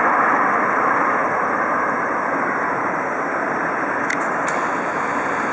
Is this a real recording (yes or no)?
yes